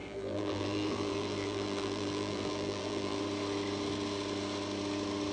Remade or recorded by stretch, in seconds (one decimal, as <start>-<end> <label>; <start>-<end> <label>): 0.0-3.2 remade; 3.2-5.3 recorded